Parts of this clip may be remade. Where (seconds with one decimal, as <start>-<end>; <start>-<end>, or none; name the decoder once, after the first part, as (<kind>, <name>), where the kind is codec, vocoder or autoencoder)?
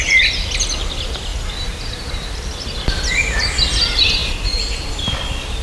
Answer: 0.0-4.2 (vocoder, BigVGAN v2); 4.9-5.6